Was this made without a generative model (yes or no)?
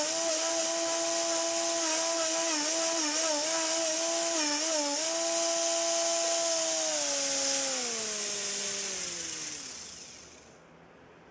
yes